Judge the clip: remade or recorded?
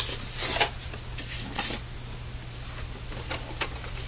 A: recorded